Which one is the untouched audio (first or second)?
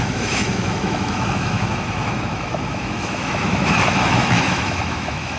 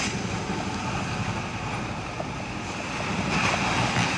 second